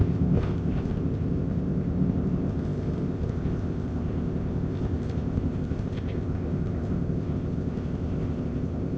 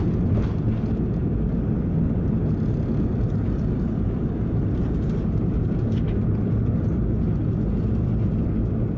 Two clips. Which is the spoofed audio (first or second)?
first